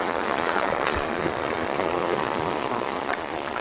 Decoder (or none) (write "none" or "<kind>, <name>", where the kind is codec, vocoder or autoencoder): vocoder, Vocos